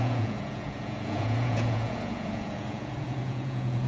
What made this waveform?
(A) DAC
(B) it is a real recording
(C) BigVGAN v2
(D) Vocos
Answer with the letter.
D